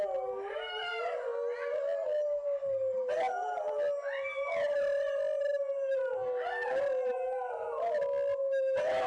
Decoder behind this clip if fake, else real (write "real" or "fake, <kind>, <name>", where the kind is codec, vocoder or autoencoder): real